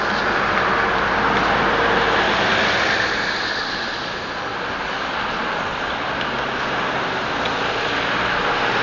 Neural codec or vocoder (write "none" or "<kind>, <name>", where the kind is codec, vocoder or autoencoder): none